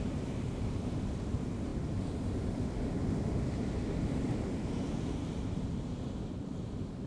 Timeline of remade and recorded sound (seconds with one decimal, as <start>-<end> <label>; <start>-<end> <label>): 0.0-1.7 remade; 1.7-4.0 recorded; 4.0-7.1 remade